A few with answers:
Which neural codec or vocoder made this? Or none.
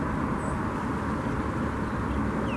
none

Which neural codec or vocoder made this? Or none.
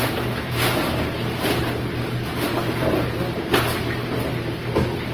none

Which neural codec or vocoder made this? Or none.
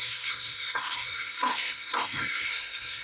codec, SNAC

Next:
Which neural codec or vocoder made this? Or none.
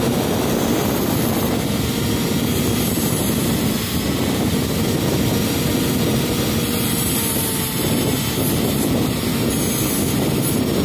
none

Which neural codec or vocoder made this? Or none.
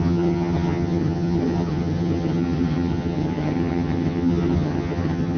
vocoder, HiFi-GAN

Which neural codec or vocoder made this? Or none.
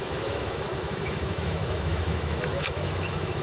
autoencoder, DAC-VAE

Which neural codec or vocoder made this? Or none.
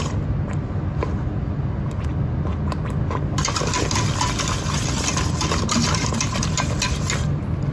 none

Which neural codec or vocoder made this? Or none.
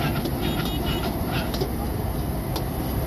none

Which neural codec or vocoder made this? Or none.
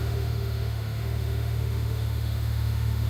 autoencoder, DAC-VAE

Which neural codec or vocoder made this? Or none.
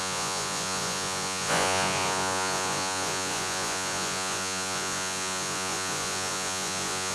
vocoder, Vocos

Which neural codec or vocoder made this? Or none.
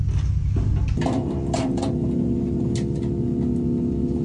none